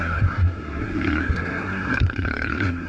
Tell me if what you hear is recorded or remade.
remade